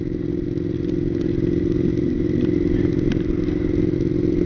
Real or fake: real